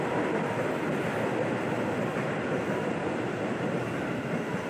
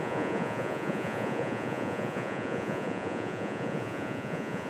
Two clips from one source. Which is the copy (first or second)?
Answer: second